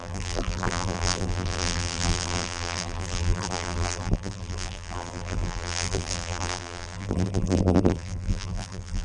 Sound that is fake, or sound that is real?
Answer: fake